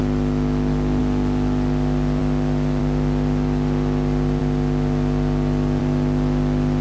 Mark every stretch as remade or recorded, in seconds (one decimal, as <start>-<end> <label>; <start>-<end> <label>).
0.0-6.8 recorded